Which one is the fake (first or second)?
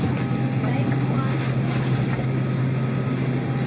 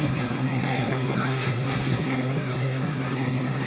second